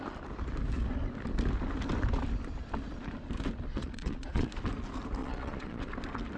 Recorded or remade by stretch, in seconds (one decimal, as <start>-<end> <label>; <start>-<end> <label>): 0.0-3.7 recorded; 3.7-4.5 remade; 4.5-5.2 recorded; 5.2-5.9 remade; 5.9-6.4 recorded